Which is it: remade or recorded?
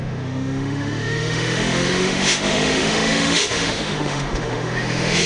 remade